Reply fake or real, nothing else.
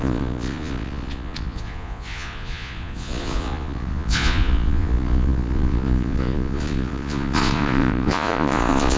fake